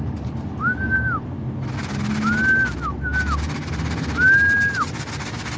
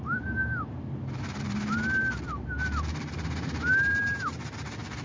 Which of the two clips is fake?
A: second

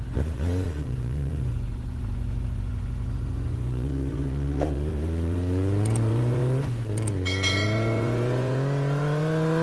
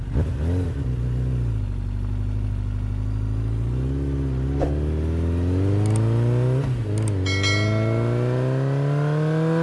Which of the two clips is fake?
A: first